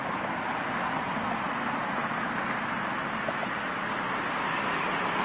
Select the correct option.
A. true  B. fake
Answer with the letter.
A